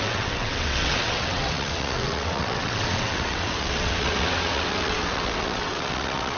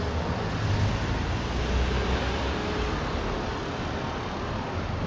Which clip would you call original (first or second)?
second